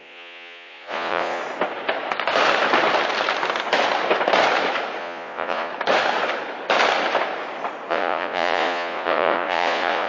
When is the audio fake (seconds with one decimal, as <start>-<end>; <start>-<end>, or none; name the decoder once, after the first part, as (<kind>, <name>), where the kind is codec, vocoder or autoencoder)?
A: 0.0-1.4 (vocoder, Vocos); 5.0-5.7; 7.9-10.1